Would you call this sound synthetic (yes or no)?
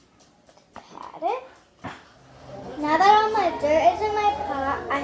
no